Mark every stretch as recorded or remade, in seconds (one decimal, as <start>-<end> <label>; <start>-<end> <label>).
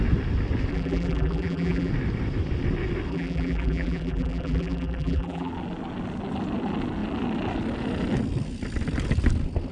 0.0-0.7 recorded; 0.7-1.9 remade; 1.9-3.1 recorded; 3.1-5.5 remade; 5.5-9.7 recorded